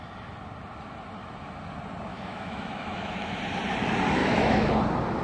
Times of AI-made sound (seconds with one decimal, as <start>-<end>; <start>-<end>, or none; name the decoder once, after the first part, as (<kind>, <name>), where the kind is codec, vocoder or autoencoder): 2.1-3.4 (autoencoder, DAC-VAE); 4.2-4.7